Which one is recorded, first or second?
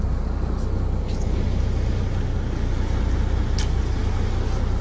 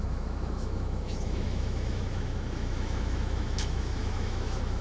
first